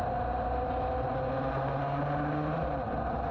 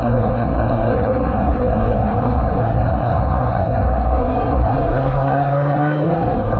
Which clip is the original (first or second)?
first